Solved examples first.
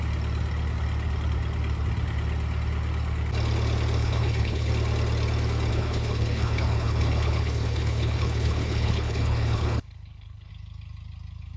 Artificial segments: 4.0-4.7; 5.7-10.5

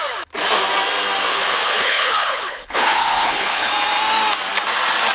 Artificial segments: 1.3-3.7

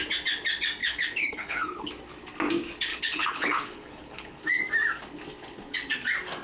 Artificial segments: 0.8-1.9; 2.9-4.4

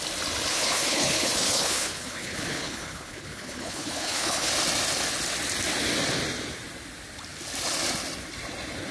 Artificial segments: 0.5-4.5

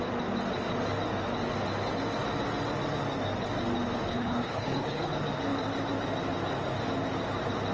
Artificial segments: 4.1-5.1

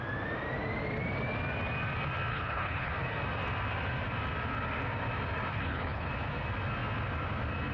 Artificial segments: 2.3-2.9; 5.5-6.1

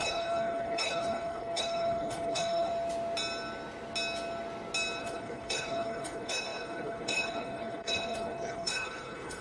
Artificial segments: 0.0-2.7; 5.0-9.4